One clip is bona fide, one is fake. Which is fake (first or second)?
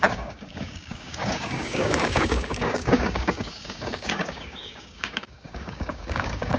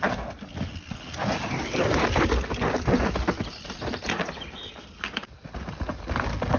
first